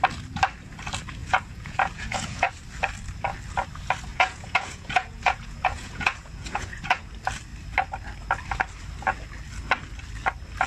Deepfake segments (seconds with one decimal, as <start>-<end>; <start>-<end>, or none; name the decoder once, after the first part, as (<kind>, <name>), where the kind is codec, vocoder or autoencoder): 1.2-2.5 (vocoder, Vocos); 4.1-7.1